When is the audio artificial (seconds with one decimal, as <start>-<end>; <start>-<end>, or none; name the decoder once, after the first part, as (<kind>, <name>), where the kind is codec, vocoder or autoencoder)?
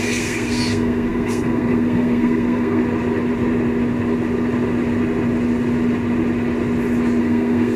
0.0-2.8 (codec, SNAC); 7.2-7.8